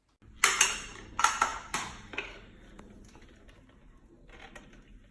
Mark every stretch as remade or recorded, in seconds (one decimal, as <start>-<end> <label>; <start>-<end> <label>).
0.0-5.1 recorded